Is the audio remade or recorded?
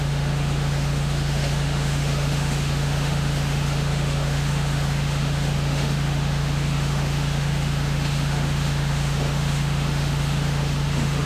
remade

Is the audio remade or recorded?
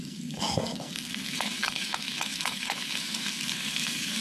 remade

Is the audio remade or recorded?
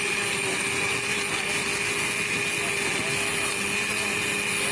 recorded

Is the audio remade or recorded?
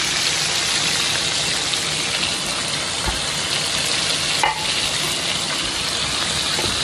recorded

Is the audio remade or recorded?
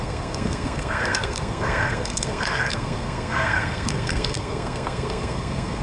remade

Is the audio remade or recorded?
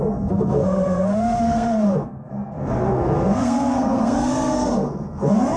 remade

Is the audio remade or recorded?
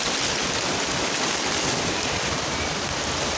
recorded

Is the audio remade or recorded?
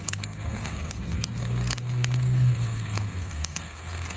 remade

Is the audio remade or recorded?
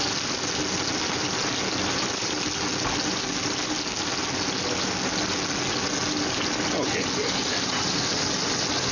recorded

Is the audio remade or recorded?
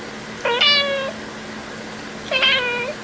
recorded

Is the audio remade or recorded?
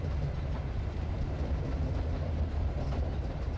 recorded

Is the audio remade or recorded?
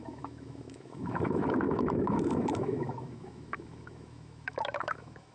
remade